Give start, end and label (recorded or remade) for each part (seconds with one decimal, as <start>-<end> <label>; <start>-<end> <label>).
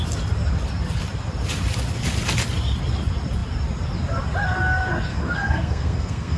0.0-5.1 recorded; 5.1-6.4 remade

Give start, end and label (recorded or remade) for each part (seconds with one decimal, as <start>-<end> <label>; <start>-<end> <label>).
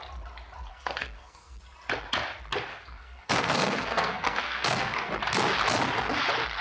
0.0-0.7 recorded; 0.7-1.6 remade; 1.6-2.7 recorded; 2.7-5.1 remade; 5.1-6.6 recorded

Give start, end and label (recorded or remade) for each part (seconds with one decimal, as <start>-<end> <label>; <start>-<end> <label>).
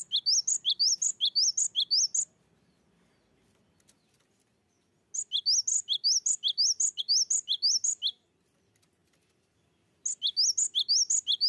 0.0-11.5 recorded